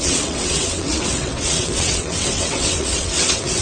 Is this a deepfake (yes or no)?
yes